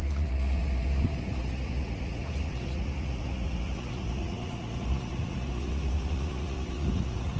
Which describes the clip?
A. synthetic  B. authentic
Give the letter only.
A